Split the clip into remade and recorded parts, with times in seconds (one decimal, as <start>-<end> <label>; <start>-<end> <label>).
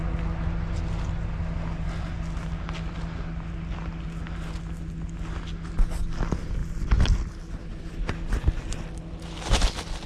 0.0-10.1 recorded